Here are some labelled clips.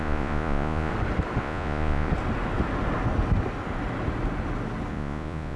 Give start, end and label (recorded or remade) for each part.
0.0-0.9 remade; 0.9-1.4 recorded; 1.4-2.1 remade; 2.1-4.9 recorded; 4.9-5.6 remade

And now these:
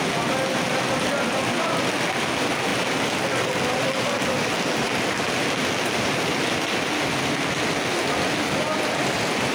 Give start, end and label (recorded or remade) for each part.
0.0-9.5 recorded

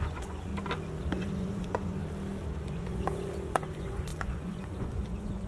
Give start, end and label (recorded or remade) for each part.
0.0-0.5 remade; 0.5-1.1 recorded; 1.1-2.0 remade; 2.0-2.6 recorded; 2.6-5.5 remade

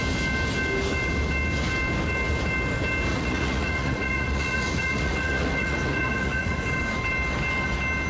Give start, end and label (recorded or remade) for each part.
0.0-3.1 recorded; 3.1-6.6 remade; 6.6-8.1 recorded

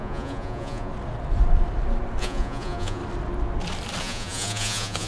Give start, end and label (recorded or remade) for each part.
0.0-0.9 remade; 0.9-2.2 recorded; 2.2-3.0 remade; 3.0-4.0 recorded; 4.0-5.1 remade

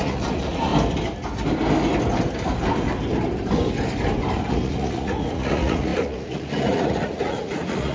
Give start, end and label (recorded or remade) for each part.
0.0-0.7 remade; 0.7-4.5 recorded; 4.5-7.9 remade